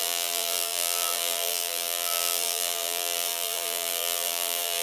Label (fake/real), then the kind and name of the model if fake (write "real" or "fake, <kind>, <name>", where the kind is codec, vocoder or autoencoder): fake, vocoder, BigVGAN v2